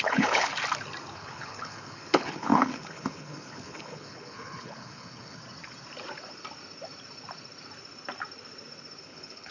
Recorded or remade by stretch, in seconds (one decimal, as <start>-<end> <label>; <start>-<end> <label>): 0.0-0.5 remade; 0.5-1.1 recorded; 1.1-5.4 remade; 5.4-9.0 recorded; 9.0-9.5 remade